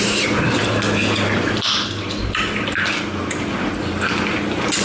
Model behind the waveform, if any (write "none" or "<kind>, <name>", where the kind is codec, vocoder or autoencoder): none